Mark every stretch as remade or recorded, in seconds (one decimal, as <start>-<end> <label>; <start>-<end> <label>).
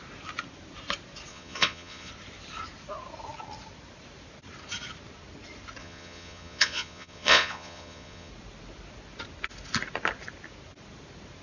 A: 0.0-1.3 recorded; 1.3-2.1 remade; 2.1-5.8 recorded; 5.8-8.3 remade; 8.3-11.4 recorded